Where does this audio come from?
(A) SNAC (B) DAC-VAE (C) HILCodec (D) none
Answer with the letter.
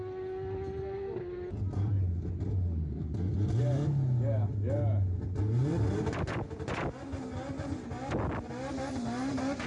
D